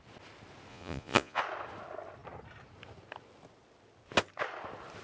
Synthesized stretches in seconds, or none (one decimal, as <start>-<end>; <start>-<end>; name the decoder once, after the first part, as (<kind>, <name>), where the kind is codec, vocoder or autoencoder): 0.7-1.4 (vocoder, Vocos)

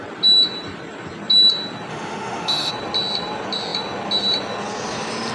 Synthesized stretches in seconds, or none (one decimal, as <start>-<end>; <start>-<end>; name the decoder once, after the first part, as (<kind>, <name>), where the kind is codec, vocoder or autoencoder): 1.9-2.7 (autoencoder, DAC-VAE)

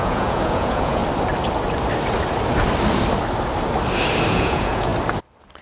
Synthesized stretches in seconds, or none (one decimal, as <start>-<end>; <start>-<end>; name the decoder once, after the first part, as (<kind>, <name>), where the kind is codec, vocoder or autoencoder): 0.0-1.0 (vocoder, Vocos); 4.3-4.9

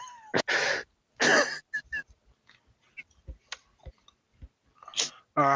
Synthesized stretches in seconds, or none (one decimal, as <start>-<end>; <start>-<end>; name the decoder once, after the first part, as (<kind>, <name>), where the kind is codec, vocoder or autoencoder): none

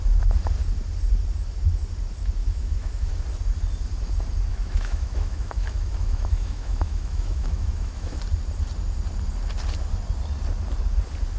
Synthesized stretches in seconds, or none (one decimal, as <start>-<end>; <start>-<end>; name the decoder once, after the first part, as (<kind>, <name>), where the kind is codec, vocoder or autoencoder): 2.4-3.1 (autoencoder, DAC-VAE); 4.5-8.2

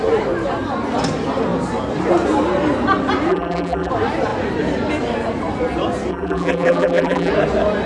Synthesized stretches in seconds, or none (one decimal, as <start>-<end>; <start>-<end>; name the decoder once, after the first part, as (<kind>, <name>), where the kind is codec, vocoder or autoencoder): 3.3-3.9 (vocoder, BigVGAN v2); 6.1-7.3